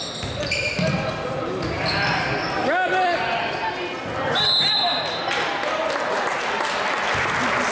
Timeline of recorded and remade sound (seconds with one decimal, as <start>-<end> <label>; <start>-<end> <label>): 0.0-7.7 recorded